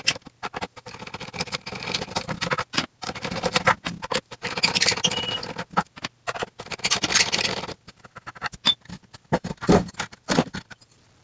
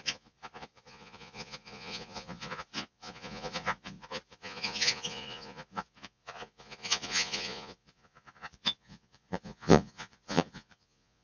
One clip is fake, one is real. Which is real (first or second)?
first